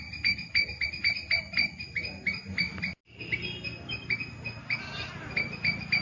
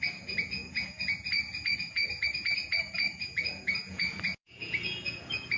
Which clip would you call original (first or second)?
first